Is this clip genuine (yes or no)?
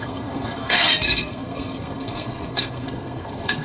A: no